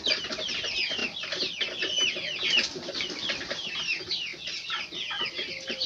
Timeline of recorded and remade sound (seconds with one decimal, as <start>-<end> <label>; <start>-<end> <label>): 0.0-5.9 recorded